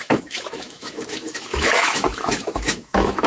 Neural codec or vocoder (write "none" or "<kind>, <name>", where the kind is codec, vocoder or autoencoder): autoencoder, DAC-VAE